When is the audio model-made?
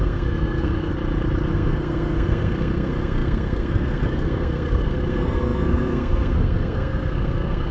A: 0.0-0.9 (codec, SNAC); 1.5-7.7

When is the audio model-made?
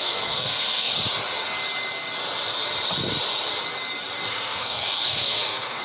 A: 0.0-0.9 (codec, SNAC); 4.3-5.8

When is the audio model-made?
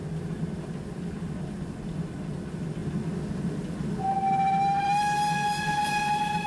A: none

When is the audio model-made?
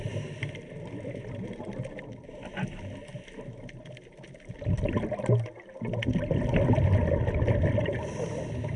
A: none